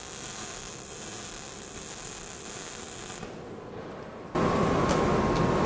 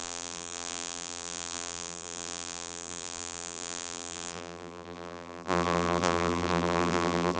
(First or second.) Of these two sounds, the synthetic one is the second